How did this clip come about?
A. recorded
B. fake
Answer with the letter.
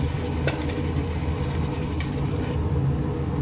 A